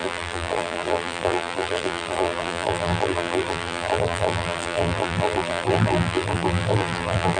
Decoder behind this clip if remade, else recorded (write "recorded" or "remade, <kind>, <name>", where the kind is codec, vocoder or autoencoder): remade, vocoder, BigVGAN v2